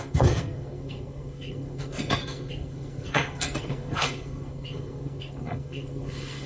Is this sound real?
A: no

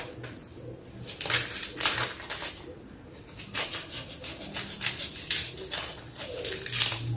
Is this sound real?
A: yes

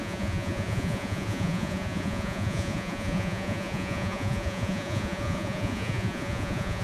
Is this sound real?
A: no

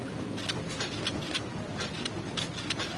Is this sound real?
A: yes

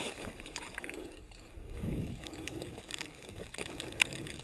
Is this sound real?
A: no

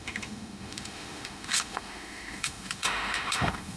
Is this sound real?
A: no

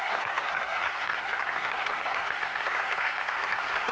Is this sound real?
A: no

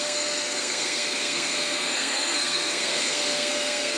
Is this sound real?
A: no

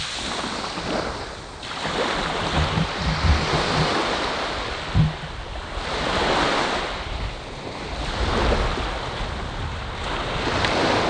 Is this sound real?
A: yes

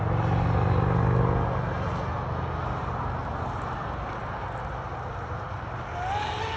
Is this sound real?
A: yes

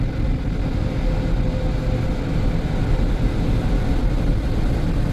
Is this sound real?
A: yes